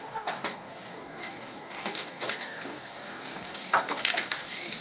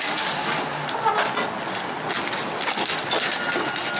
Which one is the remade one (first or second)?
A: first